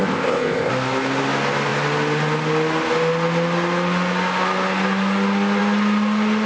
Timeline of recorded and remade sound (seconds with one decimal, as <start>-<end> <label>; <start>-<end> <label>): 0.0-0.7 remade; 0.7-6.5 recorded